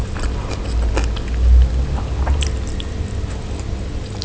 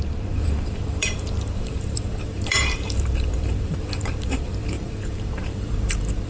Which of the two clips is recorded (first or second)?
first